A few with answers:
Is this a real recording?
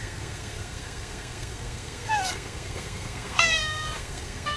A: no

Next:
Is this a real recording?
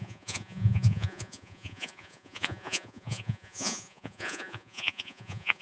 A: no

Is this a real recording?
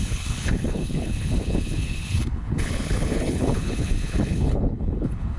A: no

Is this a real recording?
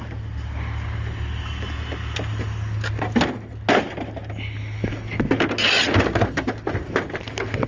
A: yes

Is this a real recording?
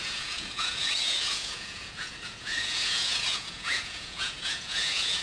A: no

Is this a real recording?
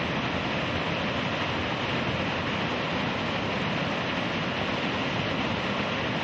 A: yes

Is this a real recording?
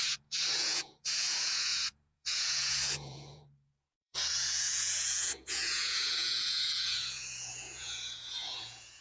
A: no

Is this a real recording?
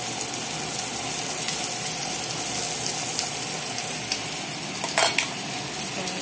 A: yes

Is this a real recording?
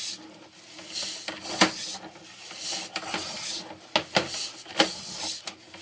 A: yes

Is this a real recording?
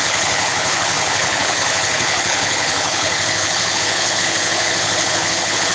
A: no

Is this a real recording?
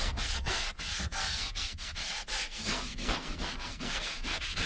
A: no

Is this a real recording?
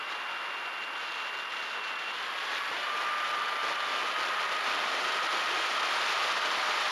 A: yes